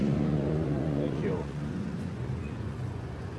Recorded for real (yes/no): no